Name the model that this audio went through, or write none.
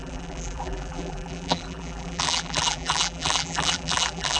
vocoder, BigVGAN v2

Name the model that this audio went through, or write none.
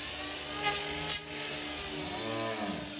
none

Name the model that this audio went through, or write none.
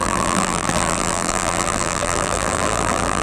vocoder, BigVGAN v2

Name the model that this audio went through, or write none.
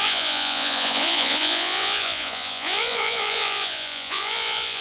vocoder, Vocos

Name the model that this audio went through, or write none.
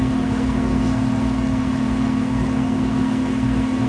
codec, SNAC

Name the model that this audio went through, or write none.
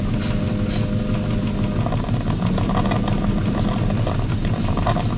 none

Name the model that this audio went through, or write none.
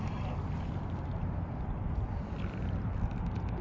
none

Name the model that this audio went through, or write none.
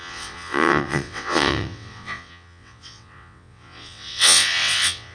vocoder, WaveNeXt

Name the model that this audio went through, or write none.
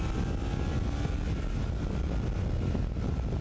none